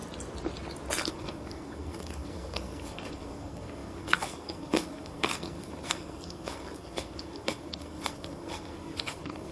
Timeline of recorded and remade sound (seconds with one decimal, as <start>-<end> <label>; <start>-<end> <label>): 0.0-1.1 recorded; 1.1-9.5 remade